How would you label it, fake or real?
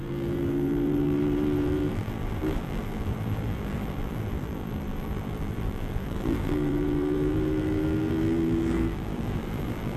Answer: fake